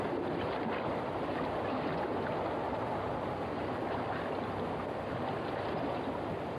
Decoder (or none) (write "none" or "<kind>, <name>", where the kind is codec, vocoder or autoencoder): none